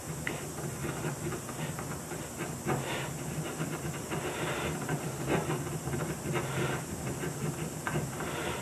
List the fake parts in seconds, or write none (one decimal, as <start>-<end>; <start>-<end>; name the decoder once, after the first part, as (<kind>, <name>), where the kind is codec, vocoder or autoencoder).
none